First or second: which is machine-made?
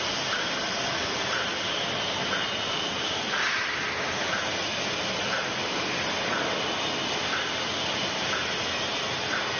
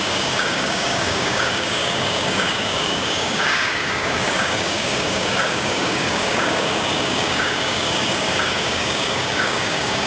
second